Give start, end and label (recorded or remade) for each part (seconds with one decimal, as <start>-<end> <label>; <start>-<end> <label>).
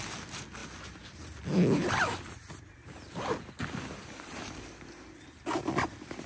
0.0-6.3 recorded